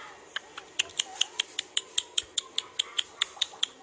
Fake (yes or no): no